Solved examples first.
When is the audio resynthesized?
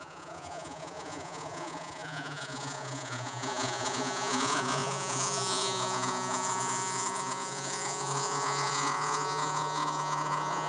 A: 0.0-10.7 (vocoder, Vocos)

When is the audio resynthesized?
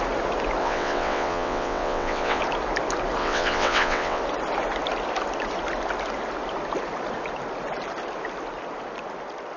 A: 0.6-2.4 (vocoder, WaveNeXt); 3.2-4.2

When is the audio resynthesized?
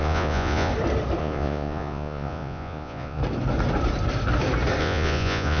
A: 0.0-0.7 (vocoder, Vocos); 1.2-3.2; 4.8-5.6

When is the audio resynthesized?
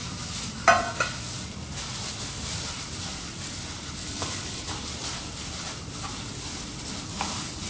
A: 4.0-4.7 (codec, HILCodec)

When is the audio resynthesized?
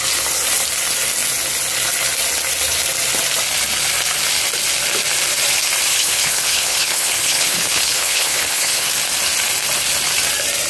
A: 5.9-8.9 (codec, HILCodec)